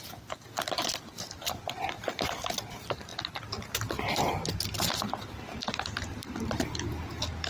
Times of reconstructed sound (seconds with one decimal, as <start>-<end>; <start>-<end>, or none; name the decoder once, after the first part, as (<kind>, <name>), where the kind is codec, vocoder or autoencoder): none